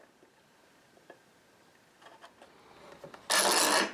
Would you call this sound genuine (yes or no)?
yes